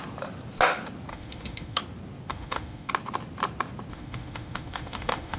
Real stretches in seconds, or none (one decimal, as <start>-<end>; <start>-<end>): 0.0-1.1; 1.8-2.3; 2.9-3.9